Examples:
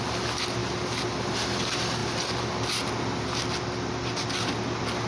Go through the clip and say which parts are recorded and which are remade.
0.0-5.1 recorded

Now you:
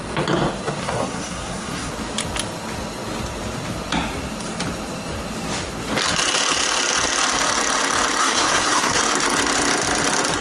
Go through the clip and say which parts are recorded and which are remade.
0.0-0.8 recorded; 0.8-1.9 remade; 1.9-8.2 recorded; 8.2-9.0 remade; 9.0-10.4 recorded

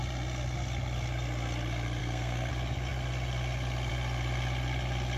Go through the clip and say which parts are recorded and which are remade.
0.0-2.0 recorded; 2.0-2.5 remade; 2.5-5.2 recorded

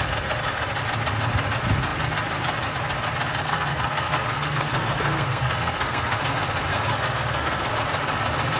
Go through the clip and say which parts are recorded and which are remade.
0.0-3.4 recorded; 3.4-6.2 remade; 6.2-6.7 recorded; 6.7-7.7 remade; 7.7-8.6 recorded

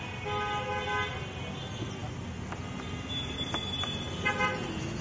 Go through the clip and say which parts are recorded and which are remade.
0.0-5.0 recorded